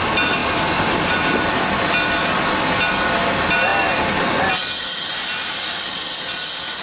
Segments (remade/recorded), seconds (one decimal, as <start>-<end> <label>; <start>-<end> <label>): 0.0-6.8 recorded